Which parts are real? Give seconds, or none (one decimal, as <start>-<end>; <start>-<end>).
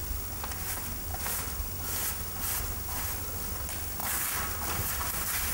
0.0-5.5